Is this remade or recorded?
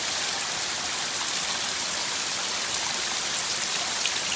recorded